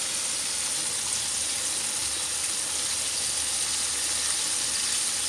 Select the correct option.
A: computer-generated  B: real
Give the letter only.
B